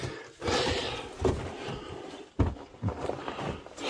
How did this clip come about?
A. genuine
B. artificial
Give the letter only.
A